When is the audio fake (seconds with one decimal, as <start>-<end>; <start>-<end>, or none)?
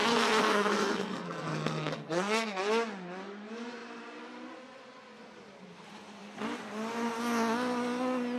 0.0-2.6